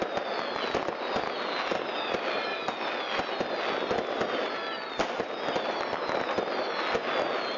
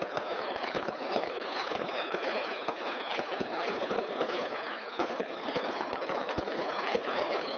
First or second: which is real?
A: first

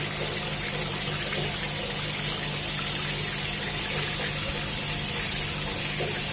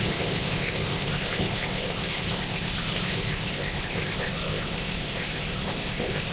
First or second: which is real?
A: first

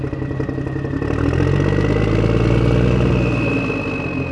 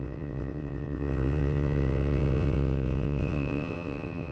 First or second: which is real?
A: first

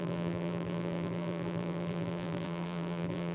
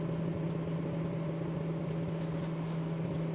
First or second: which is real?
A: second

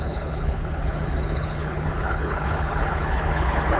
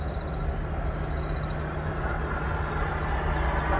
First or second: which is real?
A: second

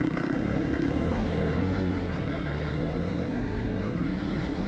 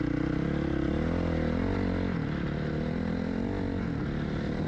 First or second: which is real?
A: second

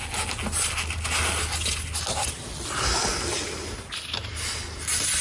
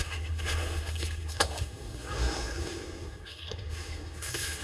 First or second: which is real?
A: first